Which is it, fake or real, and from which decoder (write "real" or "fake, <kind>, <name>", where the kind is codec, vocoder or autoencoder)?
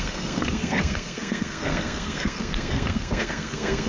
fake, codec, SNAC